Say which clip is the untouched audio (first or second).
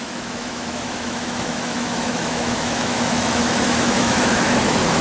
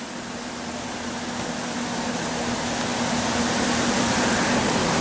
second